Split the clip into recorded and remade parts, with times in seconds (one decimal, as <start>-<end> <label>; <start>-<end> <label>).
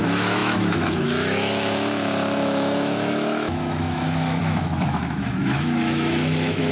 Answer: 0.0-6.7 remade